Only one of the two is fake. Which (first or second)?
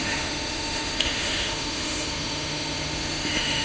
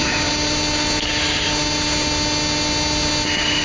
first